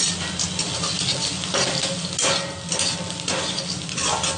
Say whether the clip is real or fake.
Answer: real